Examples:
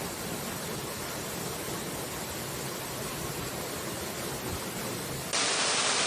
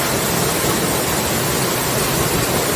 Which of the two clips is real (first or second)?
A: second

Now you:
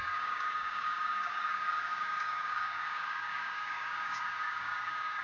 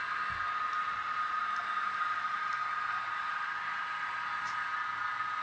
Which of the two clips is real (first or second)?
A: second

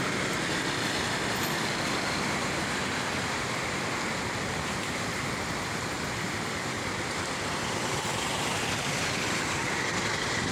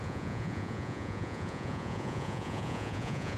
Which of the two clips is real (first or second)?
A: first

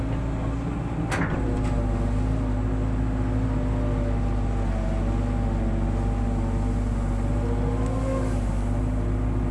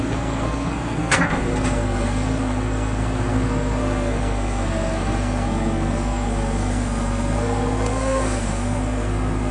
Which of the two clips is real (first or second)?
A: first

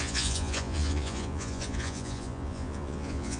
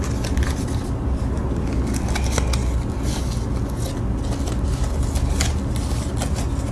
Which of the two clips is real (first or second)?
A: second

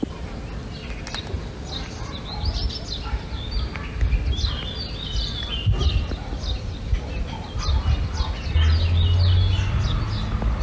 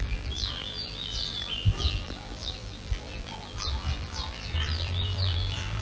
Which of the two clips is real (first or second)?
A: first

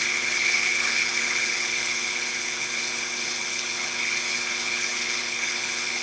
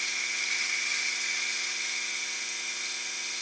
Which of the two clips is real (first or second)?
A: second